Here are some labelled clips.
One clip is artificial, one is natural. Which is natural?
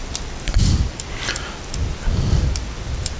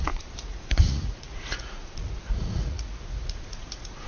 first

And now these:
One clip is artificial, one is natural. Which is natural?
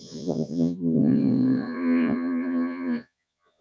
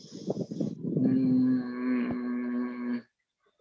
second